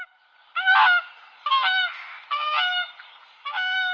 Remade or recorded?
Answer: recorded